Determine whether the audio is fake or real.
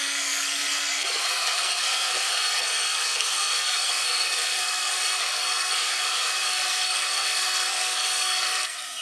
fake